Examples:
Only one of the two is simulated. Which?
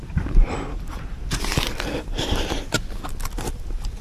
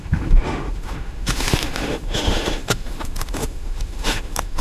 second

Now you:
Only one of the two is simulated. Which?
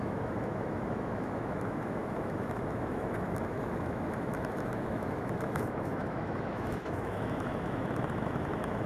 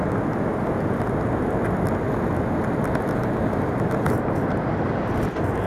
first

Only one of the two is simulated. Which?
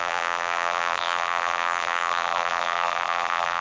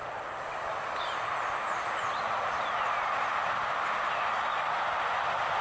first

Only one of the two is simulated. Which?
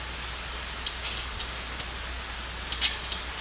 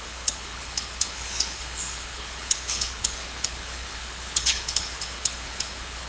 second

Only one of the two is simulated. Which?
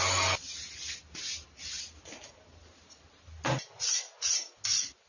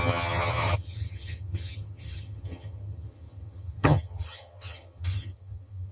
second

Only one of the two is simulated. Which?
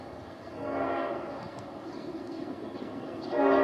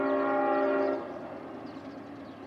first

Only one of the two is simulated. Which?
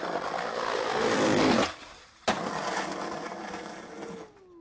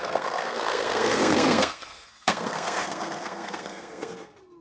second